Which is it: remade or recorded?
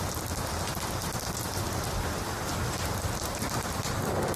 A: remade